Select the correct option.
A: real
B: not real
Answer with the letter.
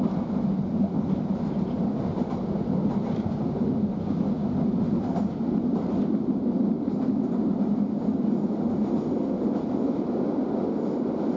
A